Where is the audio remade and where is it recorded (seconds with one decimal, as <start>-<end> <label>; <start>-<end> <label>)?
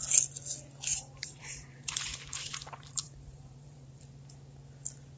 0.0-0.9 recorded; 0.9-4.0 remade; 4.0-5.2 recorded